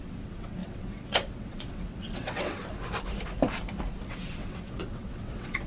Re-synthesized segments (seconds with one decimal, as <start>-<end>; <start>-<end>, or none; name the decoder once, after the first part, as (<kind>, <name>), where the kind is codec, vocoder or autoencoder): 0.0-2.6 (vocoder, WaveNeXt); 4.1-5.7